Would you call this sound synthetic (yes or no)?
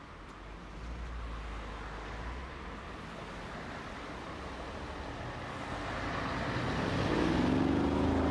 no